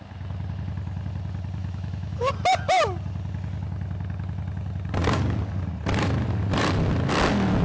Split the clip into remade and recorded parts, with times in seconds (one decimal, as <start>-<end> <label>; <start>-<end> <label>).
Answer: 0.0-1.6 recorded; 1.6-2.3 remade; 2.3-7.6 recorded